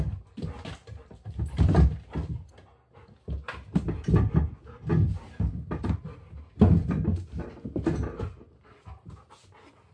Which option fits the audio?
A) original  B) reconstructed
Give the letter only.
A